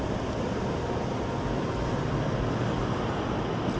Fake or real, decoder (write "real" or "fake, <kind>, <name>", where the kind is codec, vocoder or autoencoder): real